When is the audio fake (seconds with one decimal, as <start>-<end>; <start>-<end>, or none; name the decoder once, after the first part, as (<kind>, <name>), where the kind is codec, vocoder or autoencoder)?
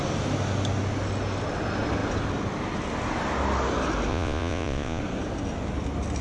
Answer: 4.1-5.0 (vocoder, Vocos)